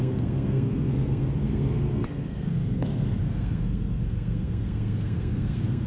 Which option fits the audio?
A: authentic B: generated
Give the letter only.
B